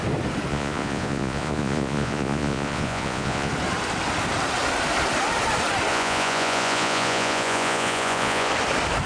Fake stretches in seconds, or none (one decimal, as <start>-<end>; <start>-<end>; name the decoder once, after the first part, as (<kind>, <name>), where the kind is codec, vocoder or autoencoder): 0.5-3.5 (vocoder, Vocos); 5.9-8.5